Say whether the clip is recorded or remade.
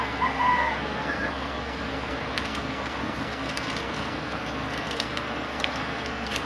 remade